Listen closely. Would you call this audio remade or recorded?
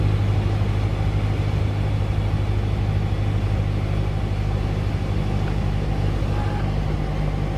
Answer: recorded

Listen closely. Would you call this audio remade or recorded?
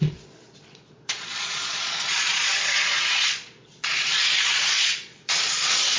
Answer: remade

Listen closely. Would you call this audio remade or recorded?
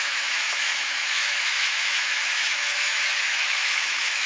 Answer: remade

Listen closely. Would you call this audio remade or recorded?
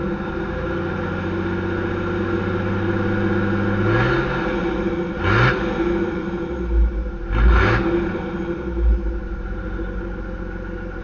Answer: recorded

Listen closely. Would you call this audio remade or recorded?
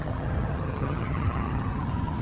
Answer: remade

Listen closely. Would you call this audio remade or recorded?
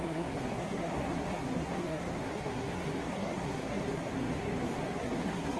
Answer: remade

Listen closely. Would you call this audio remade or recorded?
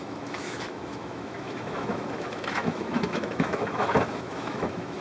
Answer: remade